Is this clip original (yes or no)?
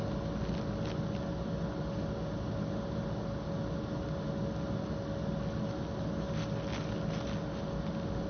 yes